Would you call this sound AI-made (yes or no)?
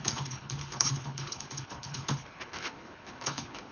yes